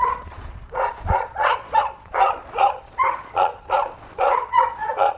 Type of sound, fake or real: fake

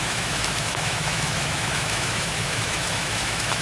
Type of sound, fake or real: fake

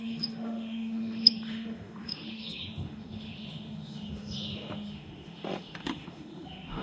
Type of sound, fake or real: fake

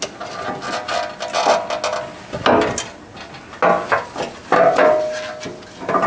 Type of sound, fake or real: real